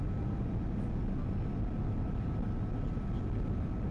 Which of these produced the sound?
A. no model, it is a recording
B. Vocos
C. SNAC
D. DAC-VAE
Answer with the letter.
A